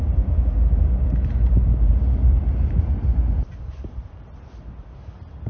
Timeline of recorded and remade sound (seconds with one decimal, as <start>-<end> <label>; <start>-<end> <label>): 0.0-5.5 recorded